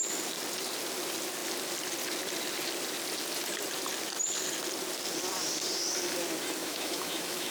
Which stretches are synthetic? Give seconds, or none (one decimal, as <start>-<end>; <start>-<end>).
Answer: 6.6-7.5